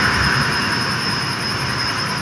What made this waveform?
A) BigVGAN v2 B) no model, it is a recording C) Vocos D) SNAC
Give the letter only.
B